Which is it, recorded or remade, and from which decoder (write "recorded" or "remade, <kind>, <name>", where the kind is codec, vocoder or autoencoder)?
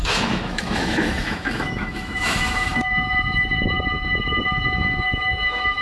remade, autoencoder, DAC-VAE